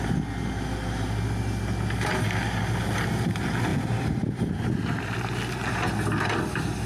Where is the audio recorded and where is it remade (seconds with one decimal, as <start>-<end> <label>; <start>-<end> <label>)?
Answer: 0.0-3.7 recorded; 3.7-4.4 remade; 4.4-6.9 recorded